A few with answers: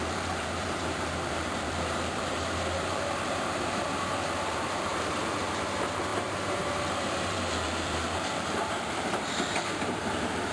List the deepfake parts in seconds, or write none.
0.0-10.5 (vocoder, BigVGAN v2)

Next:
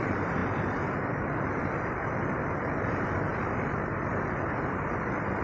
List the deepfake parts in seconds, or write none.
3.3-5.4 (vocoder, BigVGAN v2)

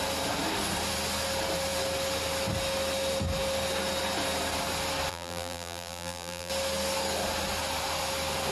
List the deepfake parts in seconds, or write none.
5.1-6.5 (vocoder, BigVGAN v2)

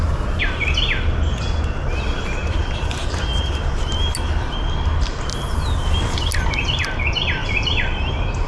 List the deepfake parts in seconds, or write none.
3.0-4.0 (vocoder, BigVGAN v2); 7.4-8.5

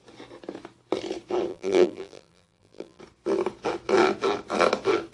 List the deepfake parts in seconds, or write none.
1.5-3.0 (vocoder, BigVGAN v2)

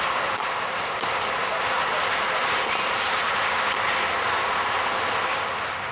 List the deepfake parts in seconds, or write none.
none